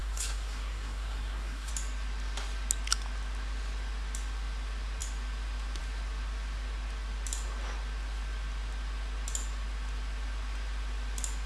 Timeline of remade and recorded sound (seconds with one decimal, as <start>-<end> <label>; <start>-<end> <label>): 0.0-1.7 remade; 1.7-11.5 recorded

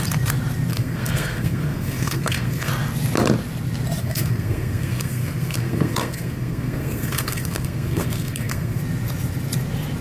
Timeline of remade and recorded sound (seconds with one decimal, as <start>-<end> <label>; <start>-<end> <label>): 0.0-0.7 recorded; 0.7-2.7 remade; 2.7-4.0 recorded; 4.0-8.8 remade; 8.8-10.0 recorded

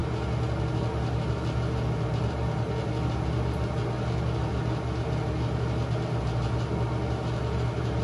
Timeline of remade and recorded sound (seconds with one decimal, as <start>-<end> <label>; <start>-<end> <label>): 0.0-8.0 recorded

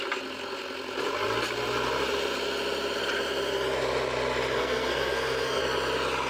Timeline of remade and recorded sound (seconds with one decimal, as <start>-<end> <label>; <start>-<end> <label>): 0.0-4.6 recorded; 4.6-5.6 remade; 5.6-6.3 recorded

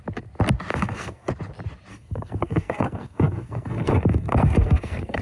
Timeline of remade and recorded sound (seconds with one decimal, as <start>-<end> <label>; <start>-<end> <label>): 0.0-0.7 recorded; 0.7-1.3 remade; 1.3-1.9 recorded; 1.9-5.2 remade

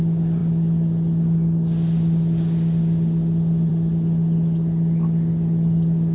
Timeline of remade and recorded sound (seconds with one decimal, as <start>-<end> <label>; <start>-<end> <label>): 0.0-6.1 recorded